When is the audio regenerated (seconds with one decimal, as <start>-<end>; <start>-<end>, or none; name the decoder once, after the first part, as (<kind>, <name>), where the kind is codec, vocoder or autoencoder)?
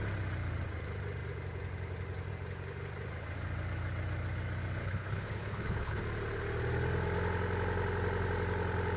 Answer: 4.8-6.0 (codec, HILCodec)